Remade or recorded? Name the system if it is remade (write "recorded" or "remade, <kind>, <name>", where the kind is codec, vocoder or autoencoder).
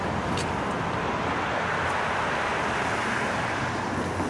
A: recorded